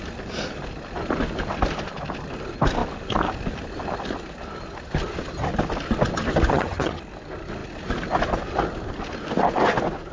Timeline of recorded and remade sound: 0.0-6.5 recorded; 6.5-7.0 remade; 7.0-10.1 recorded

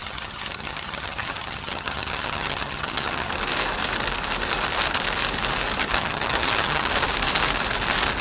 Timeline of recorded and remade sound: 0.0-3.3 remade; 3.3-5.8 recorded; 5.8-6.9 remade; 6.9-8.2 recorded

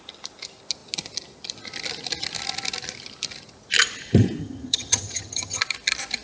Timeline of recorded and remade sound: 0.0-4.4 recorded; 4.4-5.6 remade; 5.6-6.2 recorded

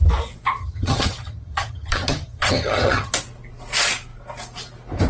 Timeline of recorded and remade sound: 0.0-0.6 recorded; 0.6-3.1 remade; 3.1-5.1 recorded

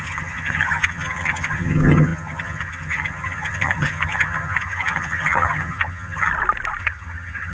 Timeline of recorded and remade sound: 0.0-6.3 remade; 6.3-6.8 recorded; 6.8-7.5 remade